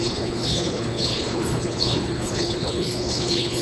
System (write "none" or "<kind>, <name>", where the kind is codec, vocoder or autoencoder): codec, HILCodec